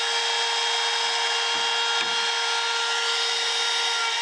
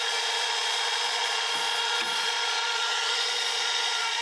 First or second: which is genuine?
first